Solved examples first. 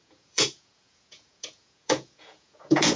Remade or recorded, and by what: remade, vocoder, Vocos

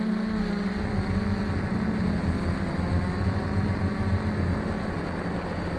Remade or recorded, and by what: recorded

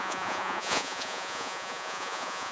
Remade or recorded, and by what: remade, vocoder, Vocos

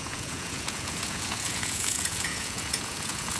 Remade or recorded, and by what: remade, vocoder, Vocos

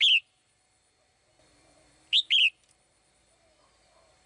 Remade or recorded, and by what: recorded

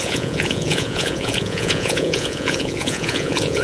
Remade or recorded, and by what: remade, vocoder, Vocos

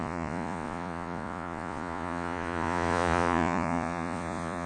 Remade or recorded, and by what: remade, vocoder, Vocos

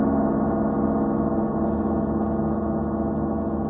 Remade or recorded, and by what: recorded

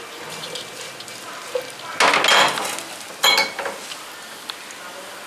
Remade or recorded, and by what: recorded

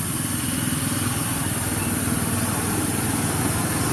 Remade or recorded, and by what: recorded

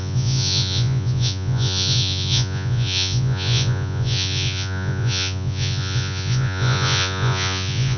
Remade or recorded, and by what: remade, vocoder, Vocos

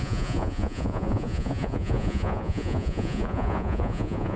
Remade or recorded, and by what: remade, vocoder, Vocos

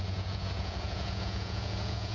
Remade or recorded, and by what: remade, vocoder, Vocos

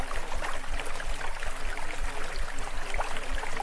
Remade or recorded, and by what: recorded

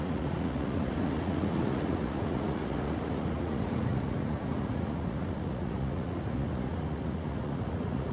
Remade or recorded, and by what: remade, vocoder, Vocos